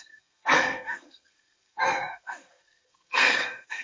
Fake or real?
fake